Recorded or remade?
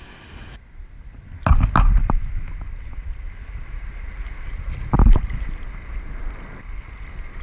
recorded